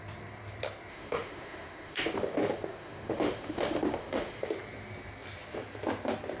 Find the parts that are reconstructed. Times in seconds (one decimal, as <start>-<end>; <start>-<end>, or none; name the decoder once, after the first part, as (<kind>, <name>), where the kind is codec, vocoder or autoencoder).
0.9-4.5 (autoencoder, DAC-VAE)